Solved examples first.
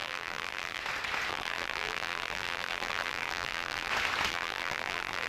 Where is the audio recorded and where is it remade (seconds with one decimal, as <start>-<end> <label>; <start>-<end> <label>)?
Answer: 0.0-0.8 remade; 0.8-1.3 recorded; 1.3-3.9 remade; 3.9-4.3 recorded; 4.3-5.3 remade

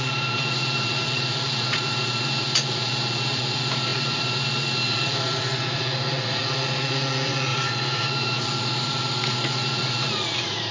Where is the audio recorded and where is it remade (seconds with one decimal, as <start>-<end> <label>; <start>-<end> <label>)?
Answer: 0.0-10.7 remade

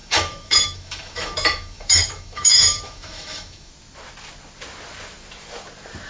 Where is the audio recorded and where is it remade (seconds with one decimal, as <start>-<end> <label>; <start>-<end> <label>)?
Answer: 0.0-3.7 remade; 3.7-6.1 recorded

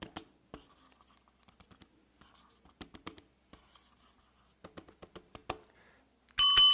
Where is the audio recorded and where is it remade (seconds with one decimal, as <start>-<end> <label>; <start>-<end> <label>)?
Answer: 0.0-6.7 recorded